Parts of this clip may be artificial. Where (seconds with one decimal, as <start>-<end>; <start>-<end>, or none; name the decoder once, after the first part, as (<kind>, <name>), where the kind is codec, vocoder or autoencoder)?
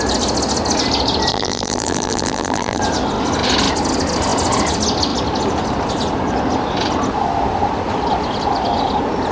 1.3-2.8 (vocoder, BigVGAN v2)